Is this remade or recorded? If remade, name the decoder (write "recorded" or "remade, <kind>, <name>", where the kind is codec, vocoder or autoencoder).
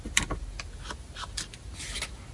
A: recorded